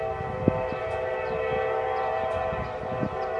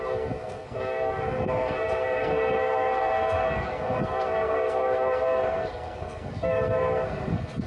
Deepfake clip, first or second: second